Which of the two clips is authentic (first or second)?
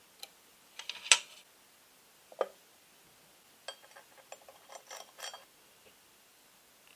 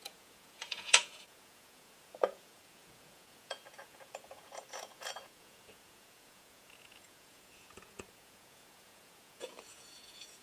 first